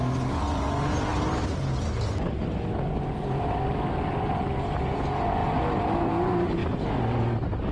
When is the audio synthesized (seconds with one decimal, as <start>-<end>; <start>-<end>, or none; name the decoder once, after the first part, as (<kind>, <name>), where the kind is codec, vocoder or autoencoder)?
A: none